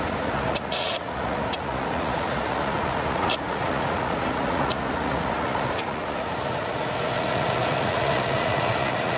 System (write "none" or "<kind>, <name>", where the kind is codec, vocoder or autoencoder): vocoder, Vocos